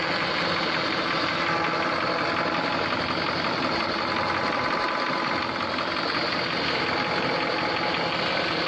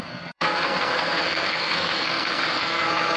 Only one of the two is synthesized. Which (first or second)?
second